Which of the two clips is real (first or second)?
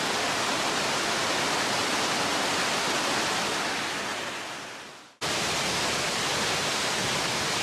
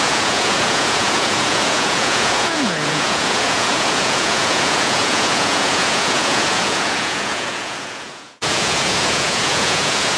first